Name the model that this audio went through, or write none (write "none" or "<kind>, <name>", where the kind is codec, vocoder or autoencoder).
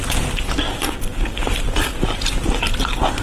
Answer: vocoder, BigVGAN v2